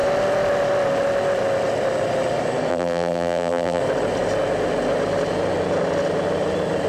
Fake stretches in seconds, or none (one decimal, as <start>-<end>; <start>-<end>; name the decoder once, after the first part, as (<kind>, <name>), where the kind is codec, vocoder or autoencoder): 2.7-3.8 (vocoder, BigVGAN v2)